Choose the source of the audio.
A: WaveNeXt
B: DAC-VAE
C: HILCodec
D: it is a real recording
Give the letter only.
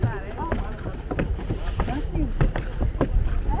D